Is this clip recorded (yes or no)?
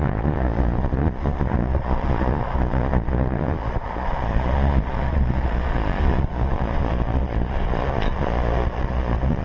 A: no